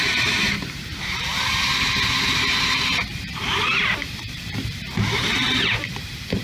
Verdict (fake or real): fake